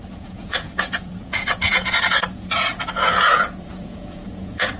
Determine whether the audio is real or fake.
fake